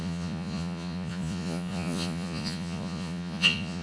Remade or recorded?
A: remade